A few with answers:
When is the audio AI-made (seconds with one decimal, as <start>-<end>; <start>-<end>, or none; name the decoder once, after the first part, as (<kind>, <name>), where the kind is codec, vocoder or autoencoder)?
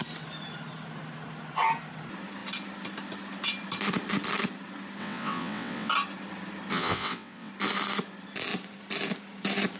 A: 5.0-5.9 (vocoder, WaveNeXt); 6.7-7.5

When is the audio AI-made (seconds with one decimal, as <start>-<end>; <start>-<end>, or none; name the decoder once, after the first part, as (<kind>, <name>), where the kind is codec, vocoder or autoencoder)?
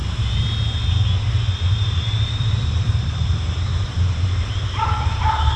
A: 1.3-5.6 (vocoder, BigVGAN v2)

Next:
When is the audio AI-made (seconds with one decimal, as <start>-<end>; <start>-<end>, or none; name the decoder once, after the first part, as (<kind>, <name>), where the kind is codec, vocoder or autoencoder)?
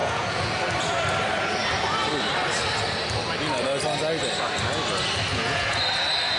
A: 0.0-0.5 (vocoder, Vocos); 5.3-5.8